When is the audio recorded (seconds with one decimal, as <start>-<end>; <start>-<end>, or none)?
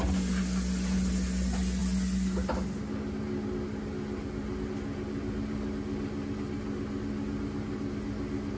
0.0-8.6